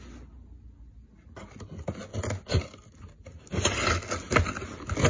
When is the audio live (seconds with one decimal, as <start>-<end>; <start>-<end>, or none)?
0.0-5.1